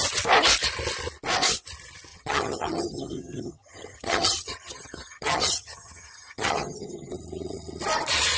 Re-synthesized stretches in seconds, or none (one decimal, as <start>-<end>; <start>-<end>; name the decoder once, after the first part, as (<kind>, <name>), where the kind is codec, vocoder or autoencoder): 2.1-7.1 (vocoder, HiFi-GAN)